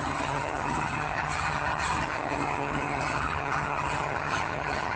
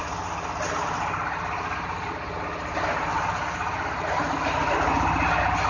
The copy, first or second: first